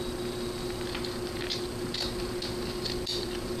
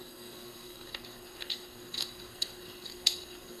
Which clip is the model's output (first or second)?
second